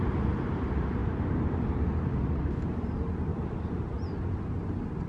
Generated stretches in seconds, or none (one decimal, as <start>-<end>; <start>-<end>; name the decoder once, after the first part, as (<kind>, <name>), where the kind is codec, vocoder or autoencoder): none